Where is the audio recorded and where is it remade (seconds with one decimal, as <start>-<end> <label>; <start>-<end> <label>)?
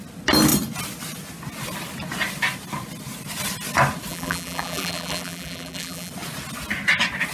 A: 0.0-4.1 recorded; 4.1-6.1 remade; 6.1-7.3 recorded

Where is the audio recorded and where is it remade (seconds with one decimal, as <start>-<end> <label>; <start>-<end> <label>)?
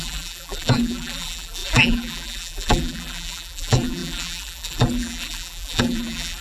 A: 0.0-6.4 remade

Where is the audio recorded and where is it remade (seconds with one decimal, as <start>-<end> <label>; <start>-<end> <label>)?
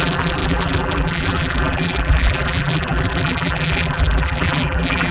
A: 0.0-5.1 remade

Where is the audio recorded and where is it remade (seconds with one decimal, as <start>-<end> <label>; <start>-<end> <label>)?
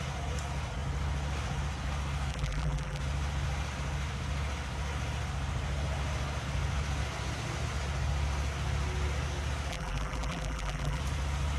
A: 0.0-2.3 recorded; 2.3-3.0 remade; 3.0-9.7 recorded; 9.7-11.0 remade; 11.0-11.6 recorded